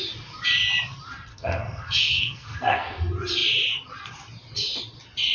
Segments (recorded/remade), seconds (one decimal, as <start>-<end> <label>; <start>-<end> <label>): 0.0-1.3 recorded; 1.3-3.0 remade; 3.0-5.3 recorded